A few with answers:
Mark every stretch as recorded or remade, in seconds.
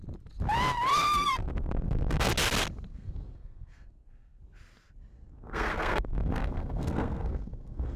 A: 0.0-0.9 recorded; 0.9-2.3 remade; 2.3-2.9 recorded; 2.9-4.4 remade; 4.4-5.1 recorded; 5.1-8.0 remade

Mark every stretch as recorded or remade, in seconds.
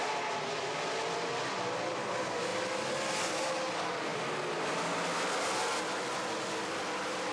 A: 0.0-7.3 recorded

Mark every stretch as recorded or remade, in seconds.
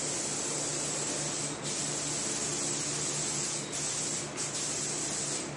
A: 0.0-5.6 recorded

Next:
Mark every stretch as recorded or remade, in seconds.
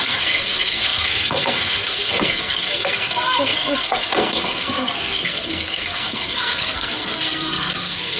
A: 0.0-8.2 remade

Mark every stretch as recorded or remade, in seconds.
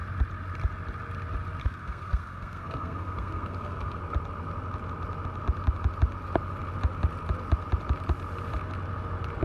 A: 0.0-1.6 recorded; 1.6-4.0 remade; 4.0-9.4 recorded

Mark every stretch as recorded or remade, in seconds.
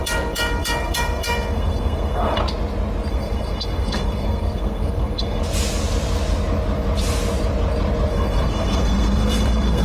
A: 0.0-2.4 remade; 2.4-3.1 recorded; 3.1-5.4 remade; 5.4-8.1 recorded; 8.1-9.8 remade